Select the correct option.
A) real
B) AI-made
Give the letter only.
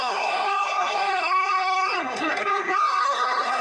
B